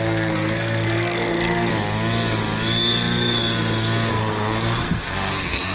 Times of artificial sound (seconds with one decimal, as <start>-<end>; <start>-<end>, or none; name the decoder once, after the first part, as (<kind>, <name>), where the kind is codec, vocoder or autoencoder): 0.0-1.7 (codec, SNAC); 4.1-5.7